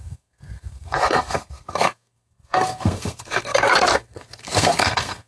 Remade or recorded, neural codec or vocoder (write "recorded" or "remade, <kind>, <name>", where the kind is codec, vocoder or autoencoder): remade, codec, SNAC